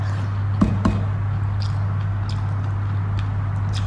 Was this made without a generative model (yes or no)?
yes